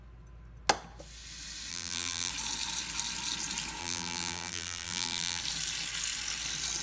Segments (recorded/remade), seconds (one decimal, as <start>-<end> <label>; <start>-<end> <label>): 0.0-1.7 recorded; 1.7-2.3 remade; 2.3-3.8 recorded; 3.8-5.4 remade; 5.4-6.8 recorded